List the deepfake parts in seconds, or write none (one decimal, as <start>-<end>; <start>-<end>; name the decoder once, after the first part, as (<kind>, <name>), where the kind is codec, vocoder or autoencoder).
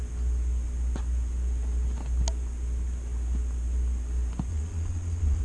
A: 4.5-5.4 (vocoder, Vocos)